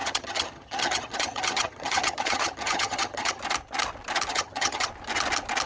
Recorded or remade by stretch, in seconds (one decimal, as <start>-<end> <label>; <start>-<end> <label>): 0.0-3.4 remade; 3.4-4.3 recorded; 4.3-4.9 remade; 4.9-5.7 recorded